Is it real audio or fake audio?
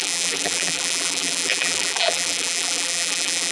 fake